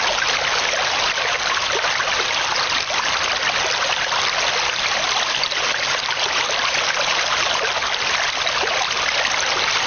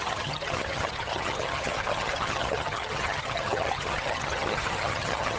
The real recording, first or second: first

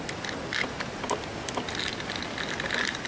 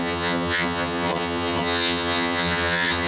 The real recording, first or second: first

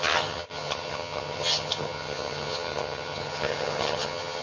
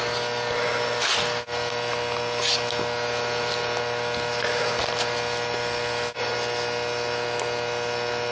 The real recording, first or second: second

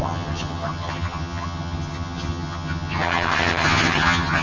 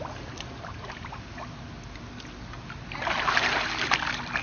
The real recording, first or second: second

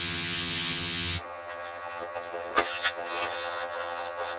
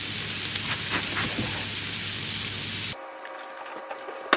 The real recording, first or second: second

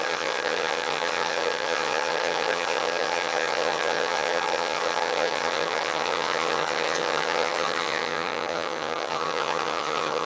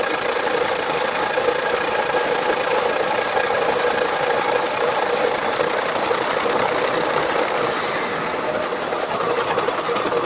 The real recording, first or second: second